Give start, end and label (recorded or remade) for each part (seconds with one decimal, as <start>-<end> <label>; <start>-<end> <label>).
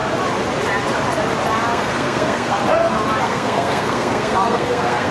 0.0-1.7 recorded; 1.7-2.6 remade; 2.6-3.2 recorded; 3.2-5.1 remade